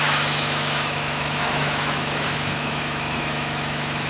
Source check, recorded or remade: remade